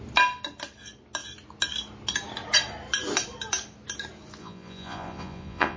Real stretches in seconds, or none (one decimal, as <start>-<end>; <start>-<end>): 0.0-4.4